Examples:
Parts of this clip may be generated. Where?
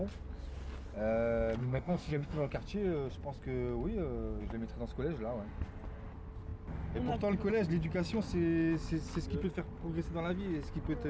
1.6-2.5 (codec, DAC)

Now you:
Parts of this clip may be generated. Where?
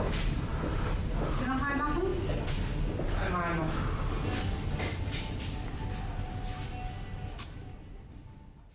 none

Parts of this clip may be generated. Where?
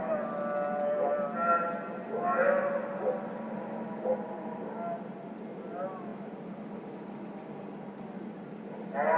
none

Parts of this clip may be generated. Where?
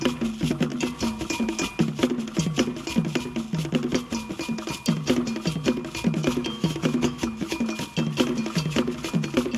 6.2-7.6 (autoencoder, DAC-VAE)